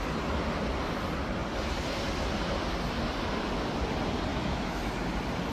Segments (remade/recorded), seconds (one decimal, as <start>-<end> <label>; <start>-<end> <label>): 0.0-4.3 recorded; 4.3-4.8 remade; 4.8-5.5 recorded